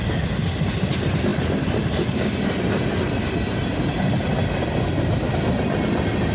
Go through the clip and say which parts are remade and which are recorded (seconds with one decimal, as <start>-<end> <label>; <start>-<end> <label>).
0.0-6.3 recorded